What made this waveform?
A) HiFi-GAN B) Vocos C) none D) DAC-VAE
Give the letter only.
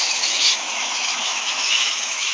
D